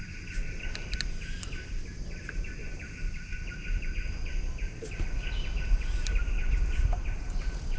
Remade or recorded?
recorded